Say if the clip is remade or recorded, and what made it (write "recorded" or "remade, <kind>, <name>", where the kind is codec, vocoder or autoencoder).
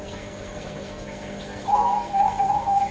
remade, codec, SNAC